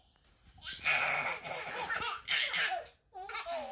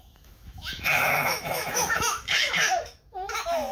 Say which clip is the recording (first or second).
first